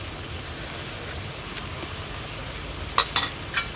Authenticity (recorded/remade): recorded